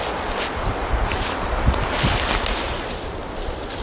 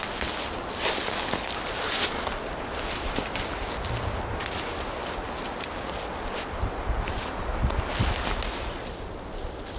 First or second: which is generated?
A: first